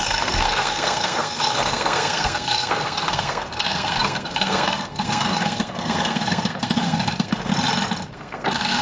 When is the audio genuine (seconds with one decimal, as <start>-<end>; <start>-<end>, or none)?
7.5-8.1